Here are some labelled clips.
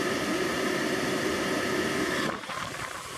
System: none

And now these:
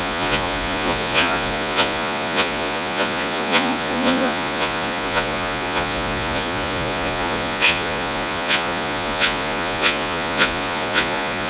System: vocoder, Vocos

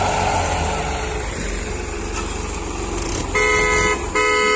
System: none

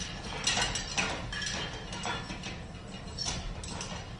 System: none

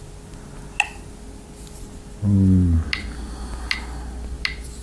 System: none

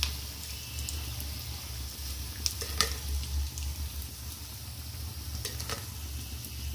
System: none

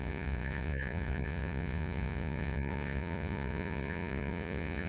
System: vocoder, Vocos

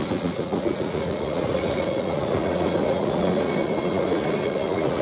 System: vocoder, Vocos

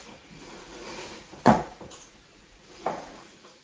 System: vocoder, Vocos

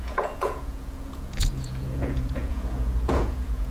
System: vocoder, Vocos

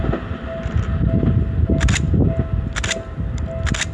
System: none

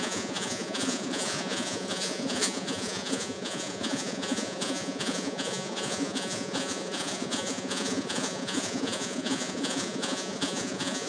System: vocoder, Vocos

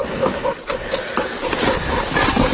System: none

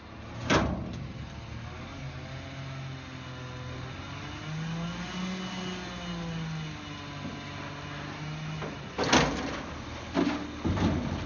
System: none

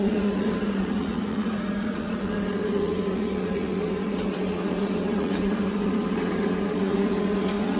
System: vocoder, Vocos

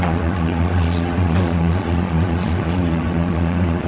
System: vocoder, Vocos